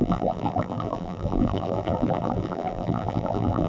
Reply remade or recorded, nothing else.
remade